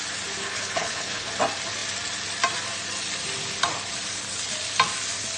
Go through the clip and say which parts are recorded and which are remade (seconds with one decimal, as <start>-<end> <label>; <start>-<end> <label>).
0.0-0.4 recorded; 0.4-1.3 remade; 1.3-5.4 recorded